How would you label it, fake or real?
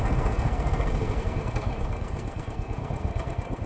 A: fake